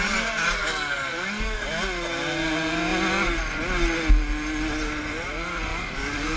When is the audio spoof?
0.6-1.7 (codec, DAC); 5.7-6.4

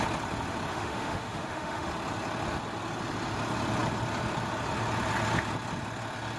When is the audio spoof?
0.7-1.9 (autoencoder, DAC-VAE)

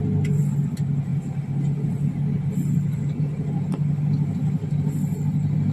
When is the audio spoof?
none

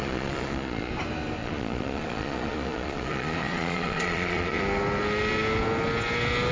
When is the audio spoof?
0.0-0.9 (vocoder, Vocos); 1.4-4.6

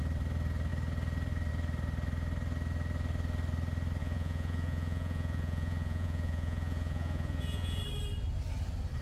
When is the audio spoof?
4.0-7.8 (vocoder, Vocos)

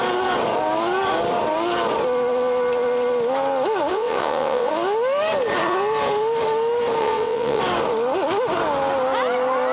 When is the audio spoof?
3.9-4.7 (vocoder, WaveNeXt); 7.0-7.6

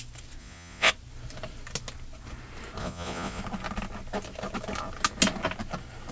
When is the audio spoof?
0.4-0.9 (vocoder, Vocos); 2.8-3.4